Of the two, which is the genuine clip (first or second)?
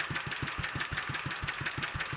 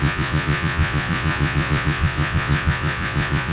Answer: first